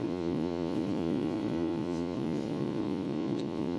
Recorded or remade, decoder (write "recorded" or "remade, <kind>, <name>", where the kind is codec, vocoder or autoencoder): remade, vocoder, Vocos